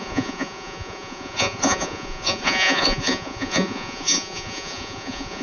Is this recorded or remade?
remade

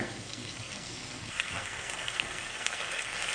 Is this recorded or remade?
remade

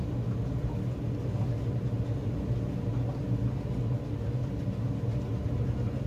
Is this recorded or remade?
recorded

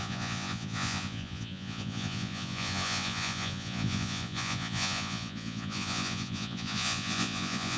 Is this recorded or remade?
remade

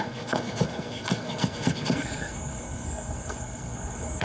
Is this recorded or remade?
remade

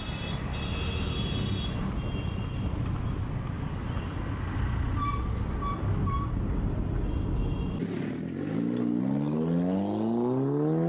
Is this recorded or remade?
recorded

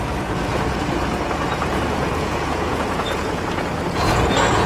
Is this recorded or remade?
remade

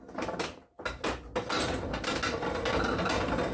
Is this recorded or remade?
recorded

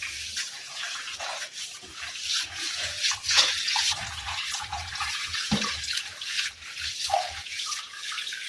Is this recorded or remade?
remade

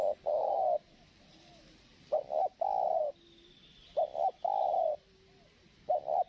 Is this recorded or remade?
recorded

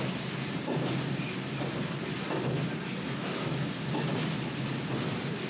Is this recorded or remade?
recorded